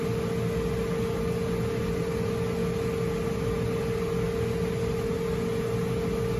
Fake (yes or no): no